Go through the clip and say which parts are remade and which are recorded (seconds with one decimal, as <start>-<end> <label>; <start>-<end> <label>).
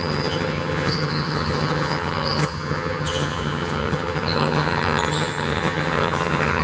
0.0-6.6 remade